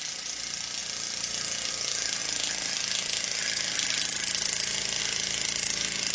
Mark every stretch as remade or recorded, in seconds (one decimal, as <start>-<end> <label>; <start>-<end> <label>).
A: 0.0-6.1 recorded